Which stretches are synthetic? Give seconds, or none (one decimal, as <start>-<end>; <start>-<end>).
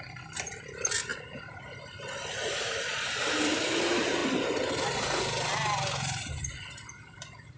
0.0-4.2; 6.3-7.6